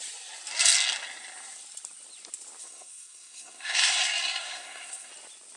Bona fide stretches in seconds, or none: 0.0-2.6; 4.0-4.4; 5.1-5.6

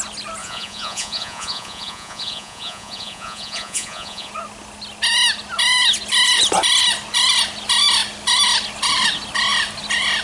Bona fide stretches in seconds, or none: 0.0-0.4; 4.3-10.2

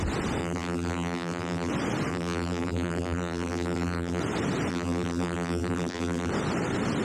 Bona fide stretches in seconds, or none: 0.0-0.4; 1.7-2.1; 4.2-4.7; 6.3-7.0

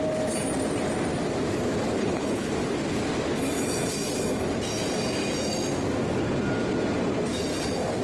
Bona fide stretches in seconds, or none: 0.0-2.0; 2.5-8.0

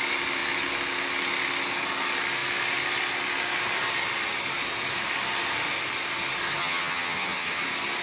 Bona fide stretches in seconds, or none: 0.0-6.6; 7.6-8.0

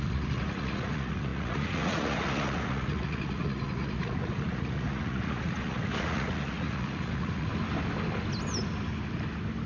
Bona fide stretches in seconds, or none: 7.5-9.7